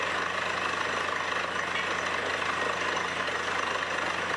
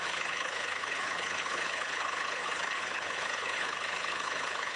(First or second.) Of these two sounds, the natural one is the first